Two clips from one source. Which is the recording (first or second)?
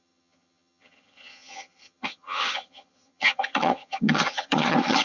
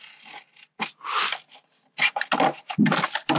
second